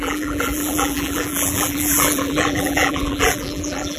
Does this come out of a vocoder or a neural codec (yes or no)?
yes